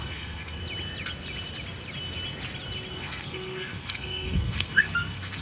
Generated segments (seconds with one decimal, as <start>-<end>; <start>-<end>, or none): 0.0-0.6; 2.9-5.4